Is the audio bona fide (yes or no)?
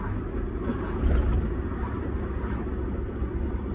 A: yes